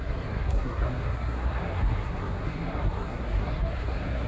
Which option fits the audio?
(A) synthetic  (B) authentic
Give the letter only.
A